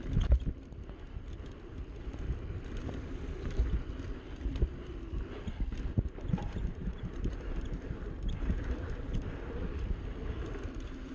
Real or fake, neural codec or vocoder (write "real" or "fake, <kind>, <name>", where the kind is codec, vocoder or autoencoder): fake, vocoder, BigVGAN v2